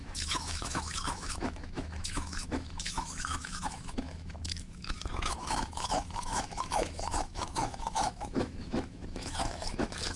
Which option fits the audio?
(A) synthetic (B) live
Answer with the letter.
A